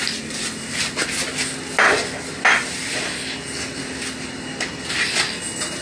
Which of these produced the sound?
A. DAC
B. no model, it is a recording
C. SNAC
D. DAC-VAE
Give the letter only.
B